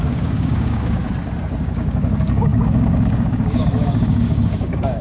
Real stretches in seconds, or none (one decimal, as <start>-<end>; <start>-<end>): 1.0-1.6

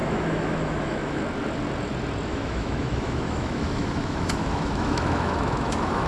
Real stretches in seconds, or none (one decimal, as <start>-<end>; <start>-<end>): 1.2-2.3

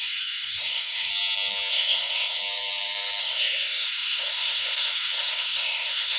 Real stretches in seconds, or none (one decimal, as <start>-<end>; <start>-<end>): 1.1-1.7; 2.4-3.2

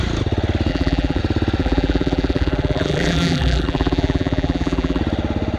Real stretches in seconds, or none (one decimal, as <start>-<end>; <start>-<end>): 0.0-0.7; 1.2-1.6; 5.0-5.6

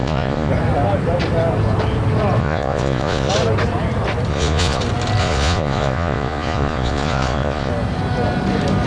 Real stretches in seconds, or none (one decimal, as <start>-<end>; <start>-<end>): 0.5-2.4; 3.3-4.3; 4.8-5.2; 7.7-8.9

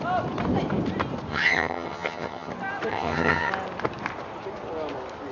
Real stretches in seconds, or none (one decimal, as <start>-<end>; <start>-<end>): 0.0-1.3; 2.5-2.9; 3.5-5.3

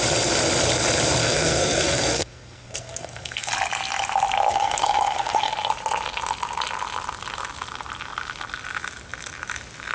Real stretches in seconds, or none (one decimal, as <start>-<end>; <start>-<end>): 0.0-1.2; 3.5-4.5; 5.5-9.9